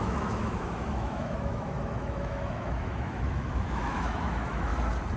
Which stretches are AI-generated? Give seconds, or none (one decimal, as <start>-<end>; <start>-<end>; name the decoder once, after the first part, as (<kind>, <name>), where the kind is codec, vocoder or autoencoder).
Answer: 0.0-4.7 (autoencoder, DAC-VAE)